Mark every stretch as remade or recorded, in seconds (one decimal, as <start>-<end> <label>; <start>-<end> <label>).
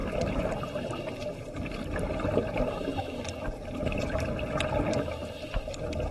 0.0-3.1 remade; 3.1-6.1 recorded